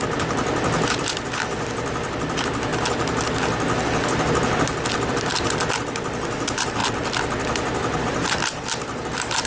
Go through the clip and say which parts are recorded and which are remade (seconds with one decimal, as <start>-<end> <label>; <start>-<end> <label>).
0.0-2.7 remade; 2.7-5.1 recorded; 5.1-6.8 remade; 6.8-8.0 recorded; 8.0-9.5 remade